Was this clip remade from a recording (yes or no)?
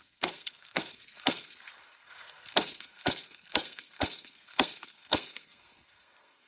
yes